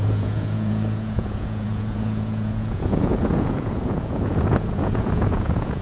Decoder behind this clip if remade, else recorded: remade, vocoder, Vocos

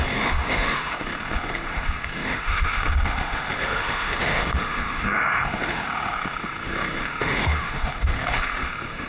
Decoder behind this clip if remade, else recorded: remade, autoencoder, DAC-VAE